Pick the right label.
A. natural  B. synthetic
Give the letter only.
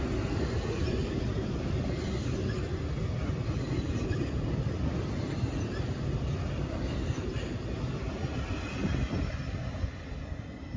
A